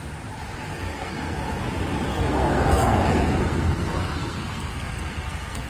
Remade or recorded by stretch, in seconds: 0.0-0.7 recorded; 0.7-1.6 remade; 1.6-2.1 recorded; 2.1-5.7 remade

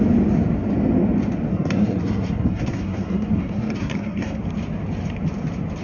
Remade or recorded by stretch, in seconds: 0.0-1.5 recorded; 1.5-4.4 remade; 4.4-5.8 recorded

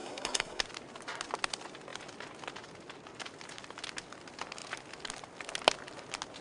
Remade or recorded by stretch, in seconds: 0.0-0.6 remade; 0.6-6.4 recorded

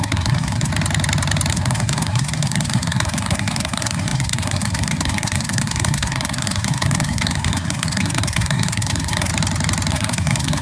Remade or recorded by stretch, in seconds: 0.0-0.7 remade; 0.7-1.5 recorded; 1.5-9.3 remade; 9.3-9.9 recorded; 9.9-10.6 remade

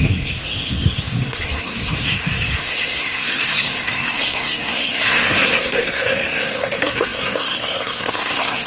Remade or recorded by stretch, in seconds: 0.0-8.7 remade

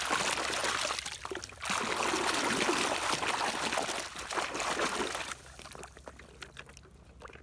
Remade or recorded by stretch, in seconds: 0.0-7.4 recorded

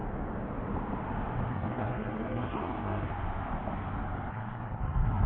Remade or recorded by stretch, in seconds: 0.0-1.5 recorded; 1.5-3.1 remade; 3.1-4.3 recorded; 4.3-5.3 remade